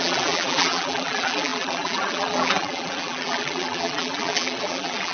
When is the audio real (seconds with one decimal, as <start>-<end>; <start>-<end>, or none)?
none